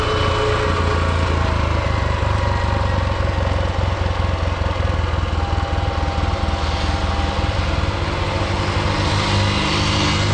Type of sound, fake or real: real